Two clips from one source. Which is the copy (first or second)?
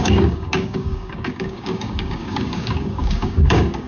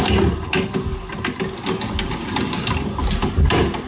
first